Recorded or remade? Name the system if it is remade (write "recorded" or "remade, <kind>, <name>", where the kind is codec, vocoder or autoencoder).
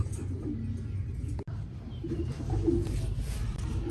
recorded